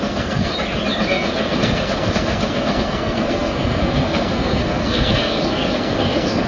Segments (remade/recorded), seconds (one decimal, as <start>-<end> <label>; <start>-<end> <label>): 0.0-0.5 remade; 0.5-1.1 recorded; 1.1-6.5 remade